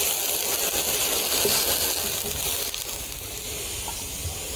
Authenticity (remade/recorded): recorded